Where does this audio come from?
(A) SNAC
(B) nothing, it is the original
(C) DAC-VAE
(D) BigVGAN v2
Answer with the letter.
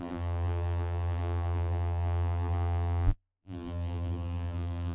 D